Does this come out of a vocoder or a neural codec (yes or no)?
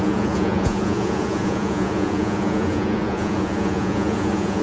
yes